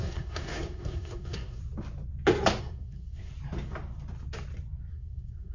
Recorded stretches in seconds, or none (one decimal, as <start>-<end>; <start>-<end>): 1.6-2.6; 3.3-4.9